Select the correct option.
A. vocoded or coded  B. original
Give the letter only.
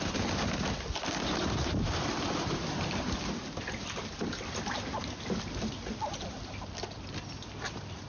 B